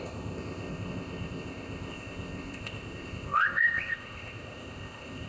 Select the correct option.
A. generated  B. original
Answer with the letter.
A